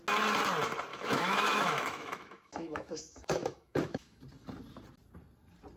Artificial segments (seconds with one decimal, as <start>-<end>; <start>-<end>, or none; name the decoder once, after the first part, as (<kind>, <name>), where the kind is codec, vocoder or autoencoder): 0.9-4.2 (autoencoder, DAC-VAE)